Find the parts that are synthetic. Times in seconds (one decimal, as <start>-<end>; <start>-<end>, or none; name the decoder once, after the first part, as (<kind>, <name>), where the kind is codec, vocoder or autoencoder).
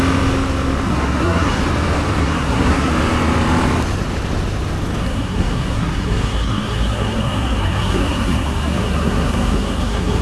0.9-1.6 (codec, SNAC); 2.2-2.9; 5.0-10.2